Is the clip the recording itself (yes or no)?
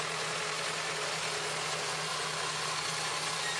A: yes